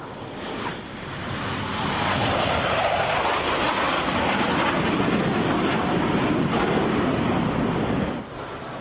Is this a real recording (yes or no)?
yes